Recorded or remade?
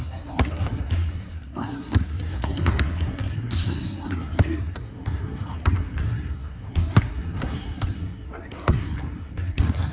remade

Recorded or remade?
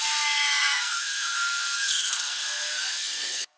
remade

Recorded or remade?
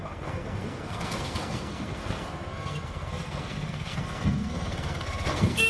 remade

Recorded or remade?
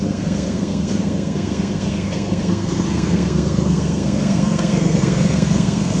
remade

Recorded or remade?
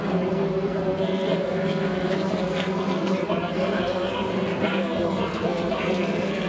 remade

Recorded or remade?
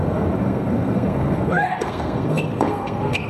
remade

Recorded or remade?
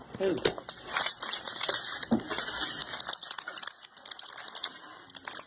recorded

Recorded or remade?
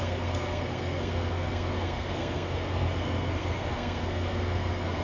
remade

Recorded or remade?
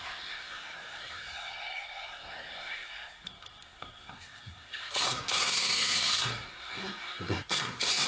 remade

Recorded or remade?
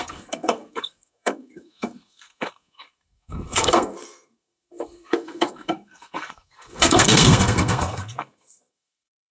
remade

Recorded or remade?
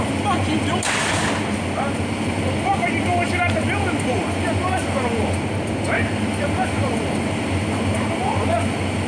recorded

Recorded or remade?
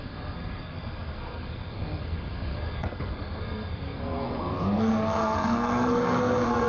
remade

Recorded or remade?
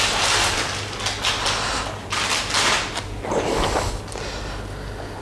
recorded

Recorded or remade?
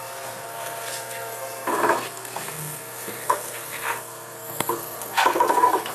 remade